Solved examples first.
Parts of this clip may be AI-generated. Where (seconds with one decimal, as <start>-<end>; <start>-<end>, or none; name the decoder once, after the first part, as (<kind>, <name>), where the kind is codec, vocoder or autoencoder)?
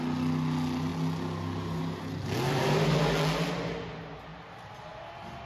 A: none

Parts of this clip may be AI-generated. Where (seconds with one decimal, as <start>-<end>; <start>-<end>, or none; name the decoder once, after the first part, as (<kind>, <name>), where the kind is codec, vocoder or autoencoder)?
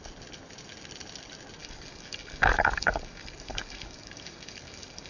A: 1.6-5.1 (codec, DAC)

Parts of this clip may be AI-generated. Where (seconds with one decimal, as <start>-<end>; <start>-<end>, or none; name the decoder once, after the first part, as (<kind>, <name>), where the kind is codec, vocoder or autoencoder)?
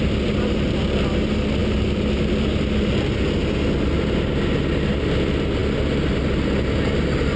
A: none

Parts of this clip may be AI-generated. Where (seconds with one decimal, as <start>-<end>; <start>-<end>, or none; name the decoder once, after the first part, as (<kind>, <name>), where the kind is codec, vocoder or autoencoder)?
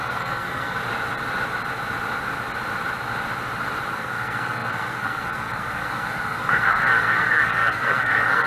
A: 0.0-0.8 (codec, SNAC); 3.9-8.5